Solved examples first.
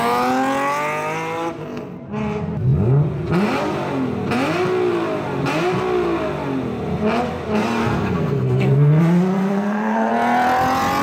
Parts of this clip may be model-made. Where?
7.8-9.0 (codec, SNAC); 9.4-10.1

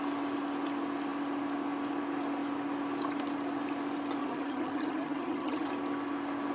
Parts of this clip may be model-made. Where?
4.2-5.7 (vocoder, HiFi-GAN)

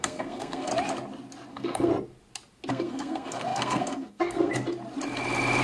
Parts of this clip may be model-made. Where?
0.0-0.7 (codec, SNAC); 1.5-1.9; 2.7-4.5

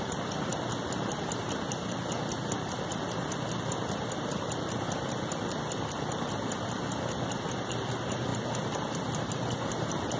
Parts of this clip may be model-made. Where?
none